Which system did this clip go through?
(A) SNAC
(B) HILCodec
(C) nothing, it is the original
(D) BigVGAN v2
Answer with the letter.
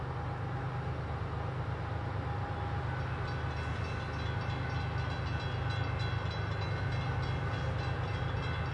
C